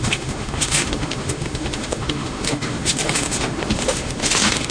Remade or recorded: remade